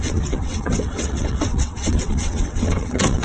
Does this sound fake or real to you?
fake